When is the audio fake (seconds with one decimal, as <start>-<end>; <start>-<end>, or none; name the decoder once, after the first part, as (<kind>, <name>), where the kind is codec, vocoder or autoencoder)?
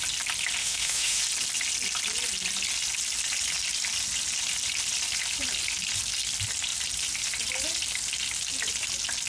0.6-1.2 (autoencoder, DAC-VAE)